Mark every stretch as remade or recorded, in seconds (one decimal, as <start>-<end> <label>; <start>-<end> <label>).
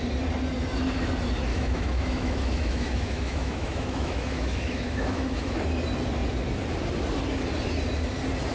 0.0-1.5 recorded; 1.5-5.6 remade; 5.6-8.5 recorded